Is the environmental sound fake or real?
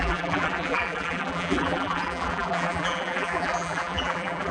fake